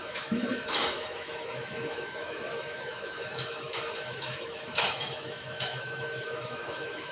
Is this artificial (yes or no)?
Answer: yes